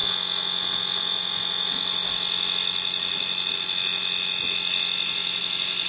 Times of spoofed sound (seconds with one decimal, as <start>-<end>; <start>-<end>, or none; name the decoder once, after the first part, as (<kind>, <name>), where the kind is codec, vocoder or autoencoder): none

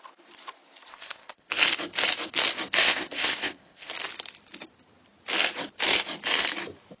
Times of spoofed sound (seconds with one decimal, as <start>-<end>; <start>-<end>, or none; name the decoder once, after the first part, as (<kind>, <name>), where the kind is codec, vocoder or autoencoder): 0.9-1.5 (codec, ZipCodec); 2.8-3.9

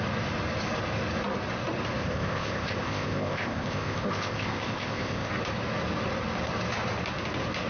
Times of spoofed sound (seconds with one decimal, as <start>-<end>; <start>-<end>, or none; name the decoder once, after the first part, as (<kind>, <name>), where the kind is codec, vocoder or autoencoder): 2.0-5.3 (codec, ZipCodec)

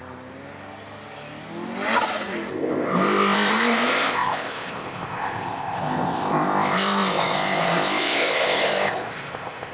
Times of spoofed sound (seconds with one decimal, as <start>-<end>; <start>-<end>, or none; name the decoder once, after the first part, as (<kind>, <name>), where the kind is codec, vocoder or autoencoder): 2.5-9.7 (codec, ZipCodec)

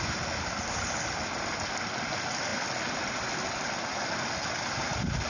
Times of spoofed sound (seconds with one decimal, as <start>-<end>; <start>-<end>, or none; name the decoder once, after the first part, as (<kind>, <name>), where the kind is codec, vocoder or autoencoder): none

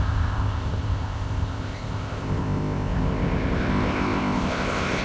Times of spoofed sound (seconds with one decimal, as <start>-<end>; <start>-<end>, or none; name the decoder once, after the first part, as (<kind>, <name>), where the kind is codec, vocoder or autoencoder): 0.0-5.0 (codec, ZipCodec)

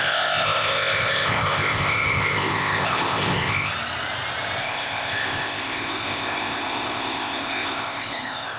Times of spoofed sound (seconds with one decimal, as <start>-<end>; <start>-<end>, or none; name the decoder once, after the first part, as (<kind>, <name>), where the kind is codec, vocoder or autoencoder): 0.0-3.7 (codec, ZipCodec); 4.6-8.6

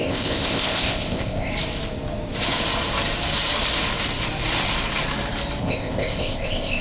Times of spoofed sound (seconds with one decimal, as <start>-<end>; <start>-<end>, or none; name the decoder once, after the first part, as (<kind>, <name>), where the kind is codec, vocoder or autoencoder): 0.0-1.5 (codec, ZipCodec); 5.6-6.8